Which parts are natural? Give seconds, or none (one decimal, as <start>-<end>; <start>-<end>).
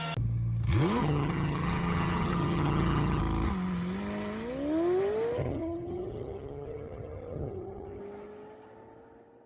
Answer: 0.0-1.0; 3.2-5.4; 8.0-9.5